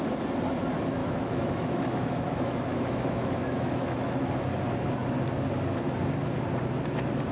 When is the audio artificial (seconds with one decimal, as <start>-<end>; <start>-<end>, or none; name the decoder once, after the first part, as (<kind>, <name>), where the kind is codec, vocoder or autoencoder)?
1.0-4.3 (autoencoder, DAC-VAE)